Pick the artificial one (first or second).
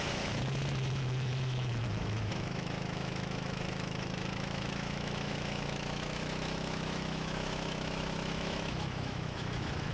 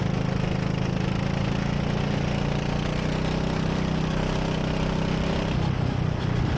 first